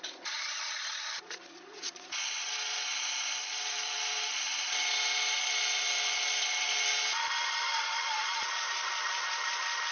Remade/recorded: remade